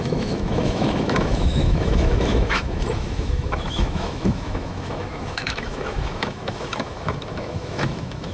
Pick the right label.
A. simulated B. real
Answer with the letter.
A